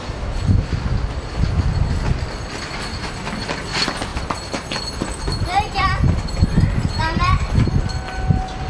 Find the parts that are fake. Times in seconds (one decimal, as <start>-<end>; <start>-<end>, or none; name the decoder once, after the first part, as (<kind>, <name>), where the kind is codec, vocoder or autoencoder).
4.1-4.7 (vocoder, BigVGAN v2)